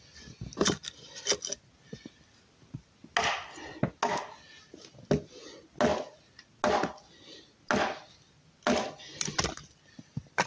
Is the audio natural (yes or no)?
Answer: yes